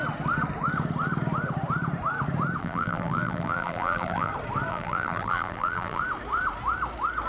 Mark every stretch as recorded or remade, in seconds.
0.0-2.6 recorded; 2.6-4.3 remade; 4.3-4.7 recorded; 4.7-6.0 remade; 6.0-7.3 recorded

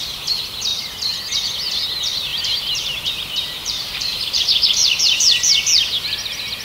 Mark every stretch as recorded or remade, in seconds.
0.0-2.3 recorded; 2.3-5.0 remade; 5.0-6.6 recorded